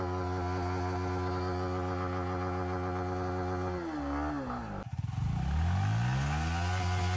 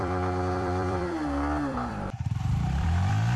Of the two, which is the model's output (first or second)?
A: second